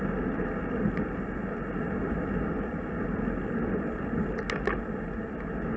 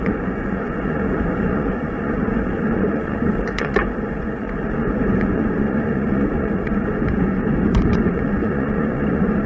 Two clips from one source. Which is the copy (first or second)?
second